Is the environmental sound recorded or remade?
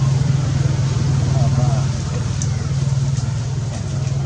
recorded